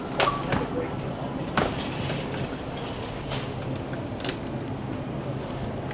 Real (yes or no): yes